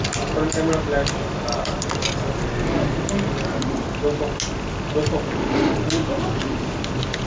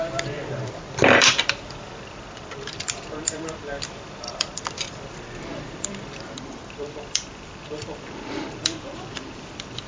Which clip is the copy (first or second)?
second